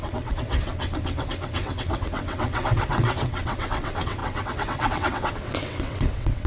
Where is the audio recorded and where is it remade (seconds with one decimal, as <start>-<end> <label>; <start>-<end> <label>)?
0.0-6.5 remade